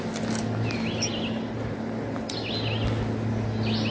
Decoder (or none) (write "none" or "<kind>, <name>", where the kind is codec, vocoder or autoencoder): none